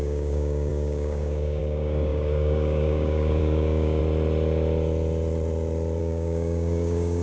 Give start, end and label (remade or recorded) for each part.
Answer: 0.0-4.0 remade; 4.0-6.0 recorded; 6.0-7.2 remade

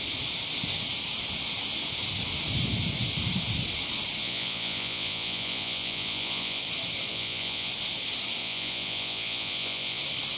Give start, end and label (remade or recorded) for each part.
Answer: 0.0-4.2 recorded; 4.2-6.6 remade; 6.6-7.1 recorded; 7.1-7.7 remade; 7.7-8.4 recorded; 8.4-10.0 remade; 10.0-10.4 recorded

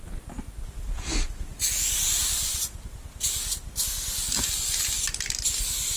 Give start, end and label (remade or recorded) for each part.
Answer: 0.0-6.0 recorded

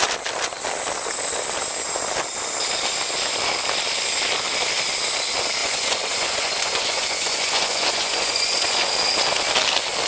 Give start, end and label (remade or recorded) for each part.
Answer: 0.0-5.6 recorded; 5.6-8.9 remade; 8.9-10.1 recorded